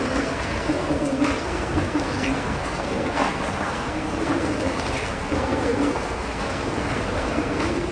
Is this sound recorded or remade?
remade